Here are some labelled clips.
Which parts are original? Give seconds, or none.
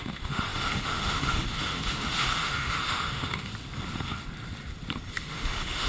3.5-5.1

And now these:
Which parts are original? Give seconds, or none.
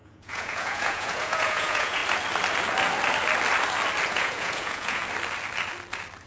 2.0-4.1; 5.0-6.3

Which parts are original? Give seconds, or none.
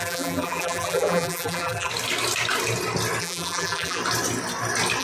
1.9-3.2; 4.0-5.0